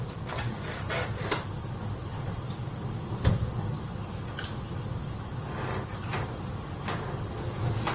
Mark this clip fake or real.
real